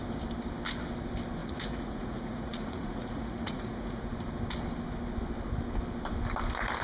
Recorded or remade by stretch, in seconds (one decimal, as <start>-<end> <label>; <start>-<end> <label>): 0.0-1.4 recorded; 1.4-4.0 remade; 4.0-6.8 recorded